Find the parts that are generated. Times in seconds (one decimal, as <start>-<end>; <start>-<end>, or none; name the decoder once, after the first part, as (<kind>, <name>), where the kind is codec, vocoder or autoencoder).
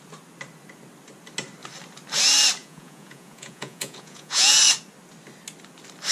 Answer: 2.6-4.6 (vocoder, Vocos)